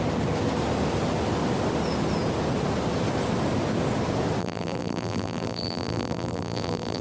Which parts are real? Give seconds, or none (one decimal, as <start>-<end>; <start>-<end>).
0.0-4.4